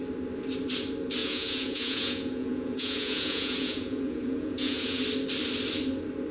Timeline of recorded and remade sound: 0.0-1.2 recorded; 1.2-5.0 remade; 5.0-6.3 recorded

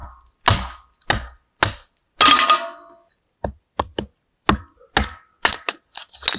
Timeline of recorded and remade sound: 0.0-6.4 recorded

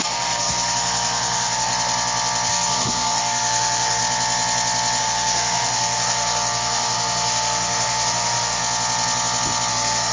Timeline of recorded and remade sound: 0.0-1.7 remade; 1.7-2.5 recorded; 2.5-4.0 remade; 4.0-5.0 recorded; 5.0-8.6 remade; 8.6-9.7 recorded; 9.7-10.1 remade

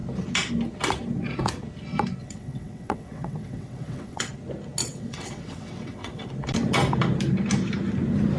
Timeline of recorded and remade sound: 0.0-2.2 recorded; 2.2-4.3 remade; 4.3-4.8 recorded; 4.8-6.3 remade; 6.3-8.4 recorded

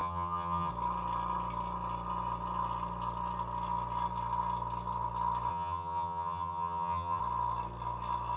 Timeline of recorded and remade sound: 0.0-0.7 remade; 0.7-5.5 recorded; 5.5-7.2 remade; 7.2-8.4 recorded

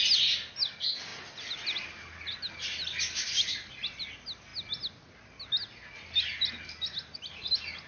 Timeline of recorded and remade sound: 0.0-7.9 recorded

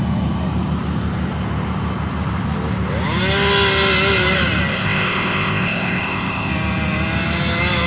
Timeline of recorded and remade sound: 0.0-4.7 recorded; 4.7-6.5 remade; 6.5-7.9 recorded

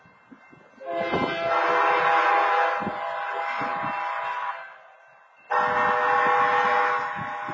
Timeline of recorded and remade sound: 0.0-7.5 recorded